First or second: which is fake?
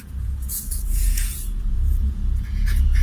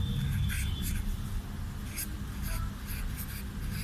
first